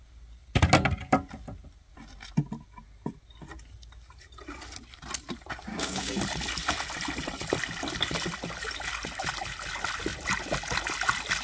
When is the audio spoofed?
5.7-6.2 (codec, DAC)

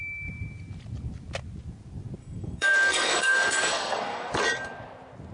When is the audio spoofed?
2.2-4.3 (codec, SNAC)